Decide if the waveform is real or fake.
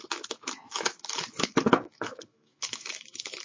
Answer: fake